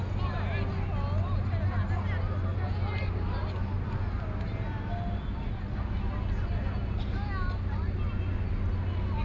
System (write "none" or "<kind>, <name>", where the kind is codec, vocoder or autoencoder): none